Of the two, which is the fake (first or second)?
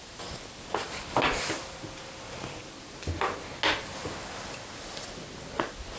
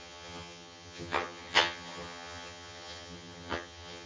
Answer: second